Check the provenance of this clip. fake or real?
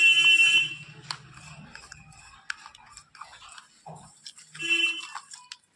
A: real